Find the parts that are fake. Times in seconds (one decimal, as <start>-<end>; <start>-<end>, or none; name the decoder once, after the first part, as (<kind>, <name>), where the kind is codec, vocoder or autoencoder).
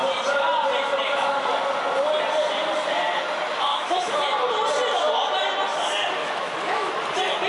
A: 3.7-4.2 (autoencoder, DAC-VAE); 6.2-6.9